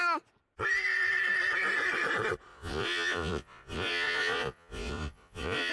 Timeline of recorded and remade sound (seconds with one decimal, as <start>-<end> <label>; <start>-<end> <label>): 0.0-2.5 recorded; 2.5-5.7 remade